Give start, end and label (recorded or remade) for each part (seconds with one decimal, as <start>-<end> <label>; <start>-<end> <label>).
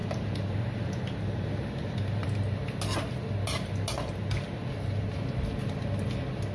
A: 0.0-2.7 remade; 2.7-6.5 recorded